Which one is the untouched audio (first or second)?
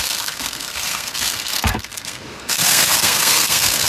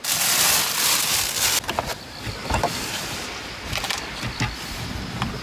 second